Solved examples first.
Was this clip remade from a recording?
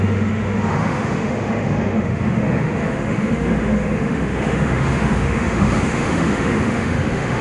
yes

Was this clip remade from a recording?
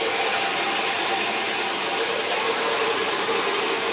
no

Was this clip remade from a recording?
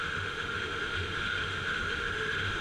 yes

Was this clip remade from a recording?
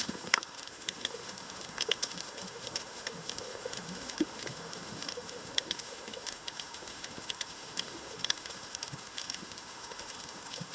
yes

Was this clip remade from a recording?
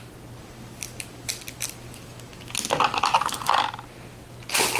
no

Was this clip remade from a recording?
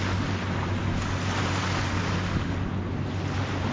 no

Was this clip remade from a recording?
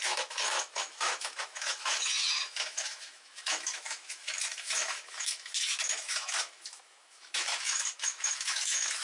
yes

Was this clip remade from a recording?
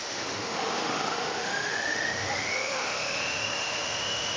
yes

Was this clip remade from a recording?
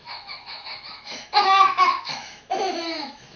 yes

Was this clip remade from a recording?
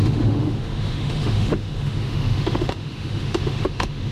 yes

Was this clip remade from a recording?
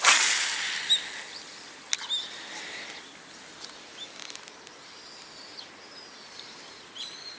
no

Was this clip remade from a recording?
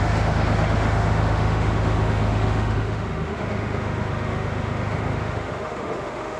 yes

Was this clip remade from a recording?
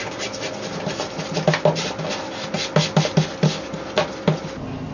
no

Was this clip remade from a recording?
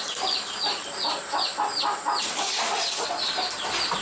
no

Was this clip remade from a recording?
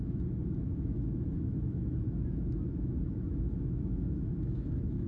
yes